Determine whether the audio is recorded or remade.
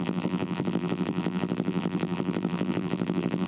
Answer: remade